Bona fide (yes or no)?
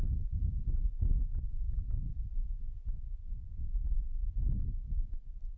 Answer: no